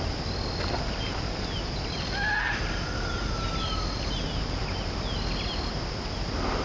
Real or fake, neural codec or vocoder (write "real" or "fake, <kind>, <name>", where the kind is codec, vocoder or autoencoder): real